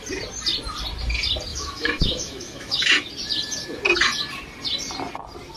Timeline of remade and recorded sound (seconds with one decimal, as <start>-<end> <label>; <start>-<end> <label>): 0.0-1.5 recorded; 1.5-2.9 remade; 2.9-5.6 recorded